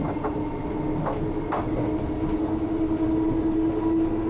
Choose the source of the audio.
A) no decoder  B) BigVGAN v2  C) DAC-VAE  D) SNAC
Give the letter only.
A